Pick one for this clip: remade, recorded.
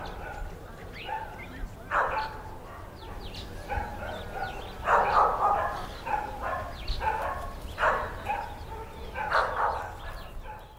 recorded